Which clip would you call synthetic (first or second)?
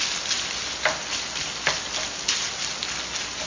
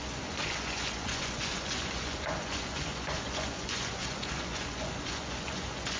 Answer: second